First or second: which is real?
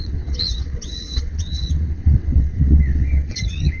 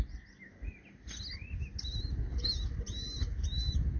second